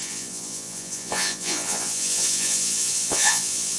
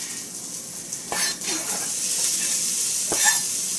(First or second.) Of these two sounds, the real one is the second